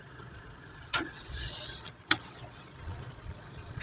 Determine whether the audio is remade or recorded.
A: remade